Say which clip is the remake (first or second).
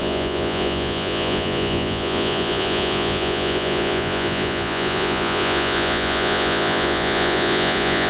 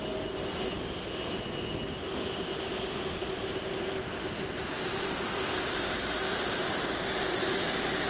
first